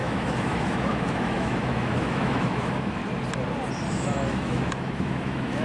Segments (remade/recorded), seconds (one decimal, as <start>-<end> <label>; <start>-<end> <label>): 0.0-3.0 remade; 3.0-3.9 recorded; 3.9-5.6 remade